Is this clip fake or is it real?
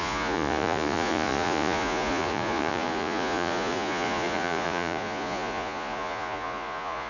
fake